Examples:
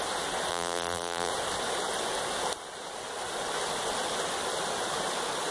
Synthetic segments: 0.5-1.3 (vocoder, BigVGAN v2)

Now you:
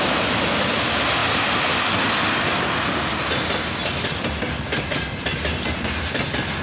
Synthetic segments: none